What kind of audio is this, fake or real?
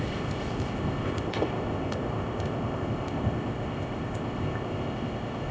fake